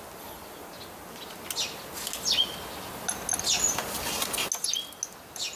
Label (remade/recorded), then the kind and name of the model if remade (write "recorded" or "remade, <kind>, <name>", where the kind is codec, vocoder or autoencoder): recorded